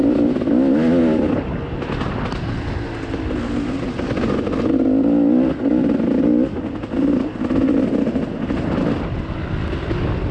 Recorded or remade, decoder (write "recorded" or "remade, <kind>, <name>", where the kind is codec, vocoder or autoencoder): recorded